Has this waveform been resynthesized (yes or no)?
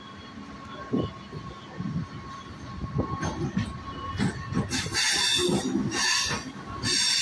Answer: no